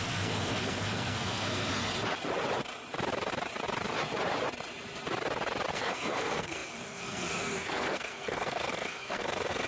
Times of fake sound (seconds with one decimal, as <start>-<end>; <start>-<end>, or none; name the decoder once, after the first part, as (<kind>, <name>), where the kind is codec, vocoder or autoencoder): 0.0-1.8 (codec, SNAC); 5.7-9.7